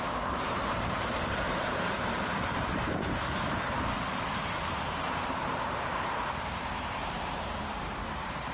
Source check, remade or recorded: remade